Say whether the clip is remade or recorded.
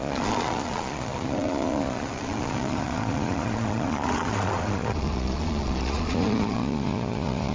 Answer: remade